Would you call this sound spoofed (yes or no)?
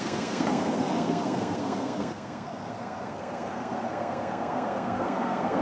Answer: yes